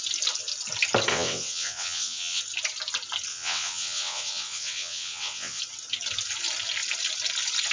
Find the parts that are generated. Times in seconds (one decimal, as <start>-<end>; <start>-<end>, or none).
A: 1.1-2.4; 3.3-5.6